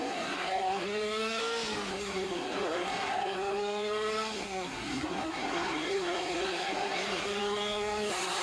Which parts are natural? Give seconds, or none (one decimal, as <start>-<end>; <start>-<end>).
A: 1.4-1.9